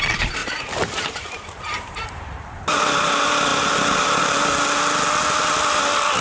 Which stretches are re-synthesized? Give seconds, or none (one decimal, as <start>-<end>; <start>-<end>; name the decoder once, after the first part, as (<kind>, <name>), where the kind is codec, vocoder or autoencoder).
0.4-2.8 (vocoder, BigVGAN v2)